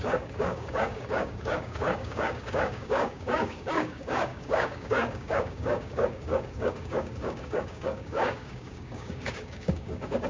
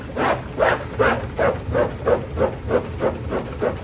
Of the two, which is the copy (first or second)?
first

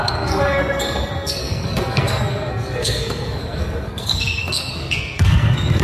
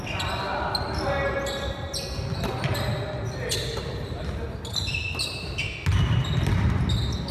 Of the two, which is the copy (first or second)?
first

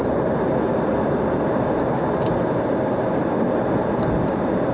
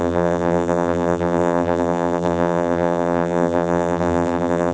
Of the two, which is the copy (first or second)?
second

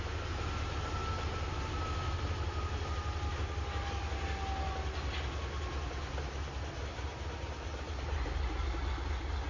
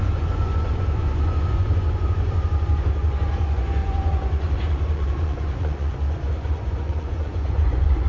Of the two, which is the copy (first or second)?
second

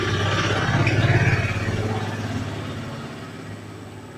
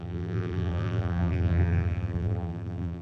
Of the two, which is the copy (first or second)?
second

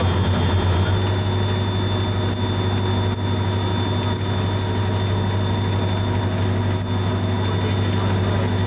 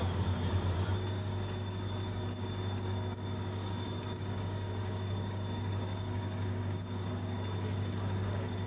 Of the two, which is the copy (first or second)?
second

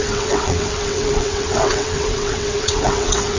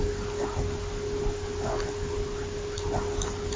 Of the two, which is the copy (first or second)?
first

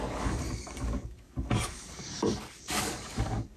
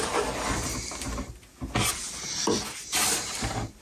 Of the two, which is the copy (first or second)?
first